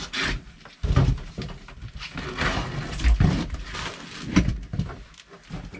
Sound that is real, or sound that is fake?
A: real